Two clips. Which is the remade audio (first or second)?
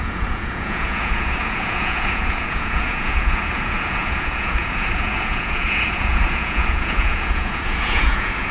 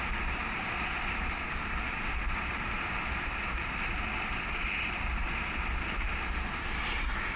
first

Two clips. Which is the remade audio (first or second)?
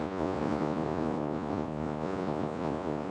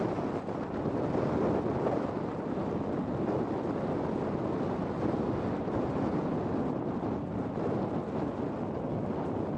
first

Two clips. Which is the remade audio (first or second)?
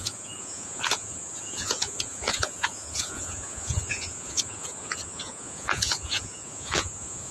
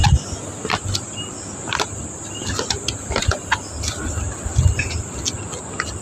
first